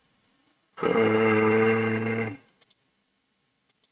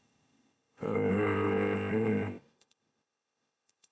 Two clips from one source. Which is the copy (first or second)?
second